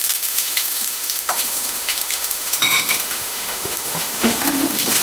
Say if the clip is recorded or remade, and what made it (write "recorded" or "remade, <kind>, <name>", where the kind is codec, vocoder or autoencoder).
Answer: remade, autoencoder, DAC-VAE